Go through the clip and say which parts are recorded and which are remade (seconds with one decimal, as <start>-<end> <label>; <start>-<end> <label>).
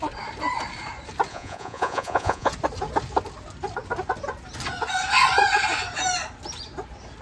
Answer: 0.0-1.3 recorded; 1.3-2.5 remade; 2.5-7.2 recorded